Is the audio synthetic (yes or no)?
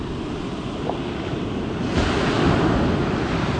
no